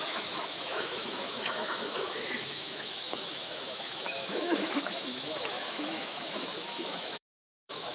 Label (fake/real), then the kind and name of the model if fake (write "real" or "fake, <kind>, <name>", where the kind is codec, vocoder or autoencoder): fake, autoencoder, DAC-VAE